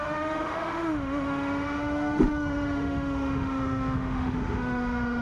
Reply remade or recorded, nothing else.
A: remade